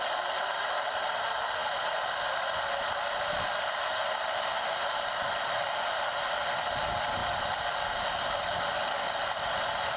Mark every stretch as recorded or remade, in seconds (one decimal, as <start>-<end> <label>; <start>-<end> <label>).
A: 0.0-10.0 recorded